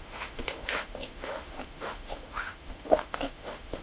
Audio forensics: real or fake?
fake